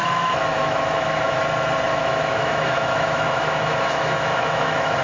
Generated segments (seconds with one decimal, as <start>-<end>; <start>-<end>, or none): 0.0-1.4; 1.9-5.0